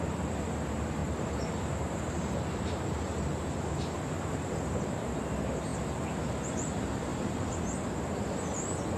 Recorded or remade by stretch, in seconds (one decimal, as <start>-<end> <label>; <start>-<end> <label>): 0.0-1.0 recorded; 1.0-5.2 remade; 5.2-7.1 recorded; 7.1-7.9 remade; 7.9-9.0 recorded